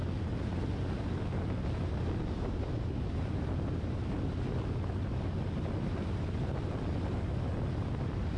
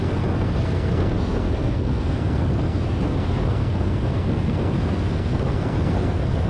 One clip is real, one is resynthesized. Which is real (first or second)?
first